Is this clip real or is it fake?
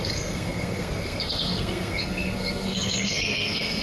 fake